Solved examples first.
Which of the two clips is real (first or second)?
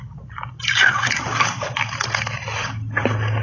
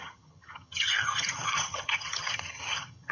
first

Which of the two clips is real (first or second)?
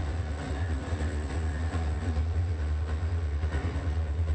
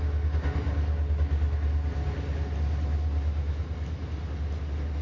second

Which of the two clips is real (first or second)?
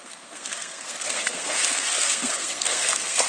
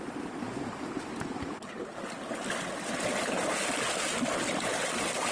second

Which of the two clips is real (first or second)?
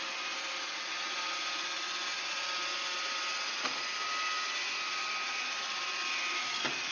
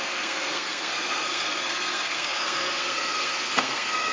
first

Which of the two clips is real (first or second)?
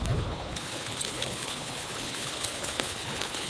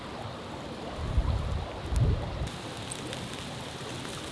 second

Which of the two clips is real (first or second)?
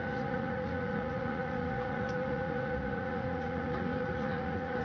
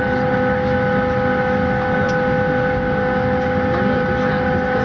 second